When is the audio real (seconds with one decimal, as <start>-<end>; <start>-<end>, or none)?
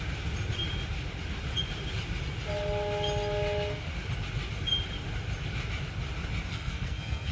0.0-6.5